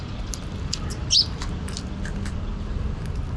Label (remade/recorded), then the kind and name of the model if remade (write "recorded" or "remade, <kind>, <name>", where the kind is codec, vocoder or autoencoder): recorded